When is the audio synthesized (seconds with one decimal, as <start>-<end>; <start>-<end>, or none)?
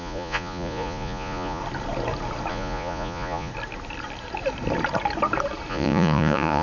0.0-1.6; 2.5-3.5; 5.7-6.6